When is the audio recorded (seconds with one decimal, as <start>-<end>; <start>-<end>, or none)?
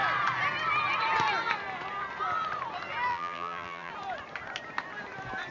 0.0-3.1; 3.9-5.5